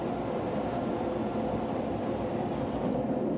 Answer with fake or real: real